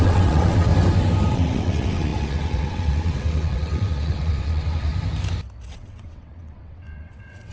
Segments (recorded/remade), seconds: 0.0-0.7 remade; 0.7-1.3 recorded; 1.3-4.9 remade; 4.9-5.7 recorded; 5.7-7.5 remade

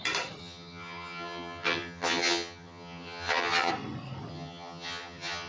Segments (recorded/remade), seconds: 0.0-0.4 recorded; 0.4-3.7 remade; 3.7-4.3 recorded; 4.3-5.5 remade

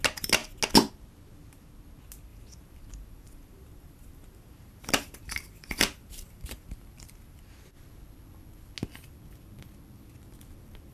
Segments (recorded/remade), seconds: 0.0-2.3 recorded; 2.3-7.4 remade; 7.4-10.9 recorded

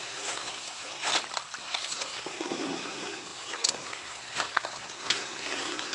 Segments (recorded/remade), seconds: 0.0-1.1 remade; 1.1-1.6 recorded; 1.6-5.9 remade

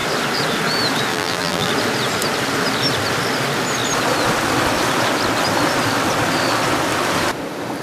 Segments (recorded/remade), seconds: 0.0-1.1 recorded; 1.1-1.7 remade; 1.7-7.8 recorded

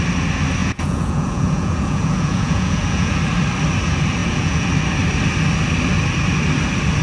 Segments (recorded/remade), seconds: 0.0-0.6 recorded; 0.6-3.2 remade; 3.2-4.2 recorded; 4.2-4.7 remade; 4.7-7.0 recorded

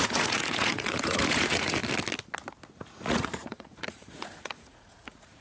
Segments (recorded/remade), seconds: 0.0-1.8 remade; 1.8-2.7 recorded; 2.7-5.4 remade